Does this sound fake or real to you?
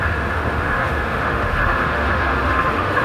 fake